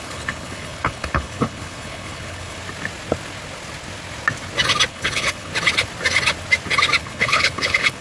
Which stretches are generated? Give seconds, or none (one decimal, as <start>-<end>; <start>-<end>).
0.0-2.6; 4.9-5.5; 7.0-8.0